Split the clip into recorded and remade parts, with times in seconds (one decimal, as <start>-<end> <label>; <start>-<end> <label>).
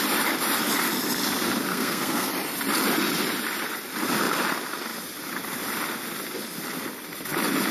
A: 0.0-1.7 recorded; 1.7-2.3 remade; 2.3-7.7 recorded